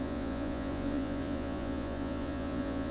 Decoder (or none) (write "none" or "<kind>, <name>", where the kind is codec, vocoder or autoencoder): vocoder, Vocos